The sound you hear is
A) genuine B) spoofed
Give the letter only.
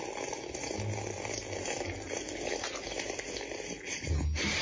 A